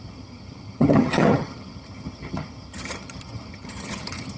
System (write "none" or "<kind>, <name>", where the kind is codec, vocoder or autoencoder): vocoder, HiFi-GAN